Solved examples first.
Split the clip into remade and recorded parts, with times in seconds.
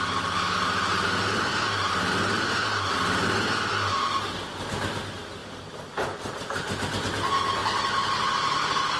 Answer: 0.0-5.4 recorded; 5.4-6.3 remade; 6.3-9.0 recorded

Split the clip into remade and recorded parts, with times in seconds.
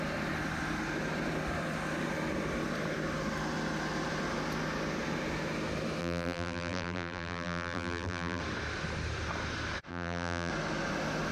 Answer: 0.0-6.0 recorded; 6.0-8.4 remade; 8.4-9.9 recorded; 9.9-10.5 remade; 10.5-11.3 recorded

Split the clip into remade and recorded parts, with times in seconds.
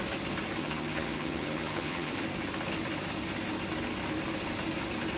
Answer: 0.0-0.6 recorded; 0.6-2.1 remade; 2.1-5.2 recorded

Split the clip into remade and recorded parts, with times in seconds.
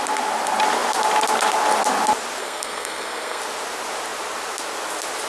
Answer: 0.0-2.4 recorded; 2.4-3.4 remade; 3.4-5.3 recorded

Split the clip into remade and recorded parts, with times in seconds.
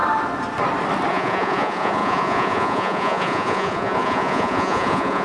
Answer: 0.0-1.1 recorded; 1.1-5.2 remade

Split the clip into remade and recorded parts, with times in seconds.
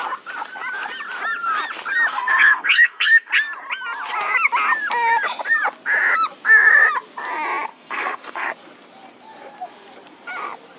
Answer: 0.0-2.1 recorded; 2.1-3.3 remade; 3.3-7.7 recorded; 7.7-8.5 remade; 8.5-10.8 recorded